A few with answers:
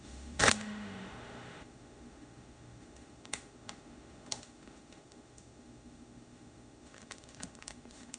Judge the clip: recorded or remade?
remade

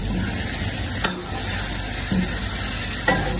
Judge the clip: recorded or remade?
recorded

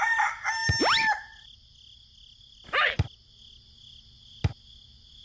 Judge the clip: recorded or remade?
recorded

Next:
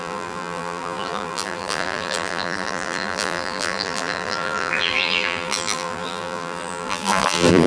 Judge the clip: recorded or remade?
remade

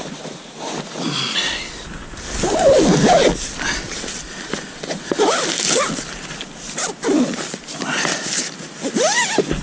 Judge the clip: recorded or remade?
recorded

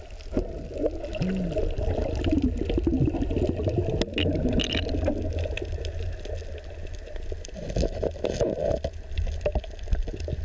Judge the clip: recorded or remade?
recorded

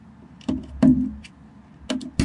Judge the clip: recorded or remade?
recorded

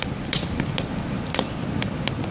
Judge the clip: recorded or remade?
recorded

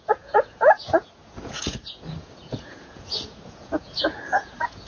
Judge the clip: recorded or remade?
remade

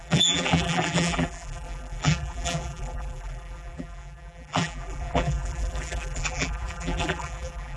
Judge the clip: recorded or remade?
remade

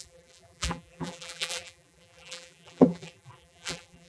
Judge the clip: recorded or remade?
remade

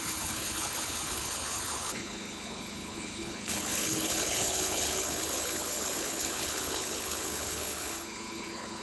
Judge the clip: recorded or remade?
remade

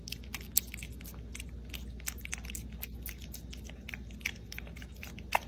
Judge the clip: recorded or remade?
recorded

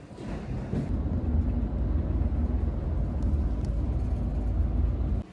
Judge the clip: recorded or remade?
recorded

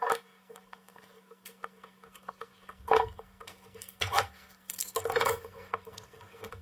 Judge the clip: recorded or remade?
remade